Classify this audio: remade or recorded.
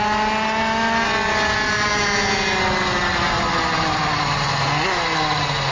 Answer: recorded